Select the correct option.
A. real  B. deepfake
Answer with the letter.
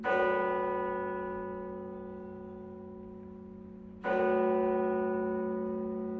A